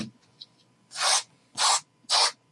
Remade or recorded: remade